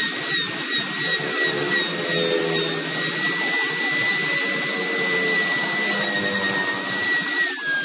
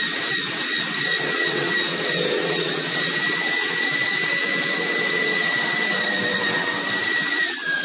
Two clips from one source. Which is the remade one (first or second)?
second